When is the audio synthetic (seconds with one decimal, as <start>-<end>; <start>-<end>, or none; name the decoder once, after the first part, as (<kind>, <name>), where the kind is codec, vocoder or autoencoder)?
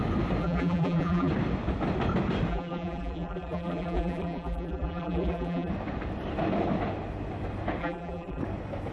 0.4-1.3 (vocoder, BigVGAN v2); 2.5-5.7; 7.8-8.4